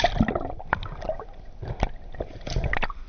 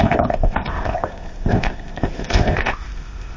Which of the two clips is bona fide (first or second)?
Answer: first